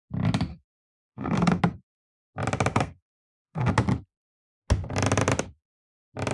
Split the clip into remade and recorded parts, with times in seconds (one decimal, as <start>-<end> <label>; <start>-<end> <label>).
0.0-0.5 recorded; 0.5-1.6 remade; 1.6-2.7 recorded; 2.7-3.7 remade; 3.7-6.3 recorded

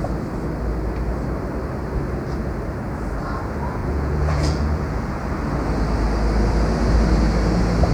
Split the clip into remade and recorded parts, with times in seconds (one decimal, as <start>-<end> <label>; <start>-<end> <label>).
0.0-3.8 recorded; 3.8-5.2 remade; 5.2-7.9 recorded